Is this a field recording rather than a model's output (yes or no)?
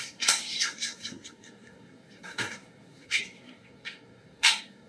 no